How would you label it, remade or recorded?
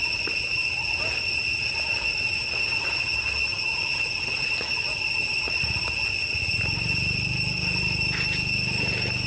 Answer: recorded